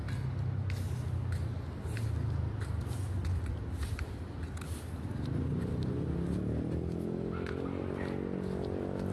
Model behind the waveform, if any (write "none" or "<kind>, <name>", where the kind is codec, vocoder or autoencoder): none